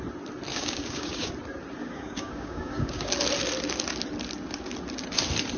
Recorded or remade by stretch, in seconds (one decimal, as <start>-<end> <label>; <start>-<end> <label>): 0.0-0.5 recorded; 0.5-1.3 remade; 1.3-1.8 recorded; 1.8-3.1 remade; 3.1-5.6 recorded